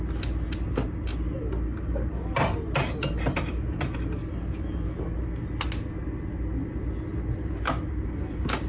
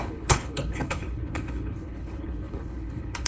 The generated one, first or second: second